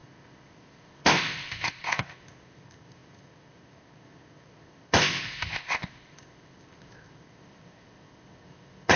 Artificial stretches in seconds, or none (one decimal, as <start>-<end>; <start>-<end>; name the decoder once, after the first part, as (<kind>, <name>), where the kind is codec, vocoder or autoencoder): 0.0-9.0 (codec, ZipCodec)